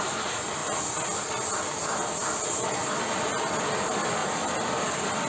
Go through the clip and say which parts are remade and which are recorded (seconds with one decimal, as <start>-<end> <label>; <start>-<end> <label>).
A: 0.0-5.3 recorded